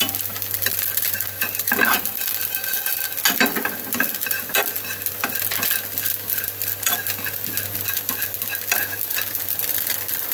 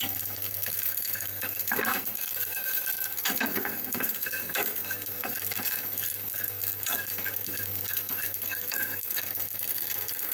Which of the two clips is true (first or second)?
first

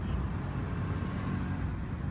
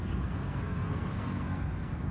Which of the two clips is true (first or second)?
first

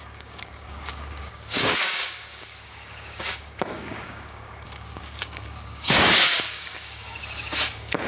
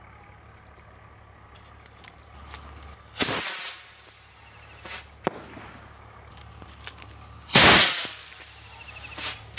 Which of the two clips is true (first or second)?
second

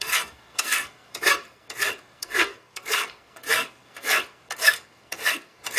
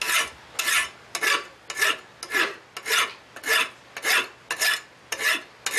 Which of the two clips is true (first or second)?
second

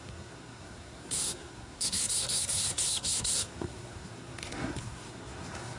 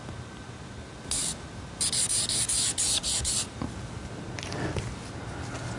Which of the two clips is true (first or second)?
second